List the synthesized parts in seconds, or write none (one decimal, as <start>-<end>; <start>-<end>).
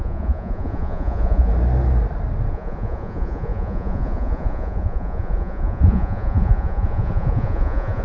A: 0.0-1.5; 2.5-8.0